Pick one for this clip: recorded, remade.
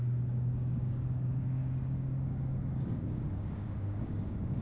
remade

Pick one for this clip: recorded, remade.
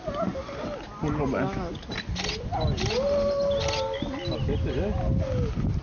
recorded